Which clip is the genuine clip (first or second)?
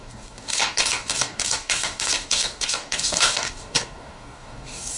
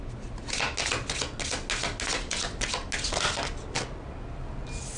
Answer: second